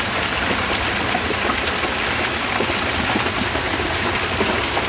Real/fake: real